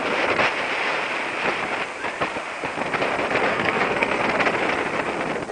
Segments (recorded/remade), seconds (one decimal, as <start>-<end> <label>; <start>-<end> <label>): 0.0-3.5 recorded; 3.5-4.2 remade; 4.2-5.5 recorded